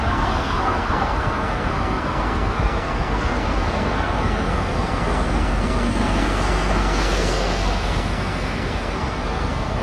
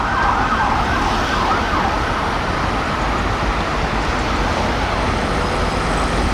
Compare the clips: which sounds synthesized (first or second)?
first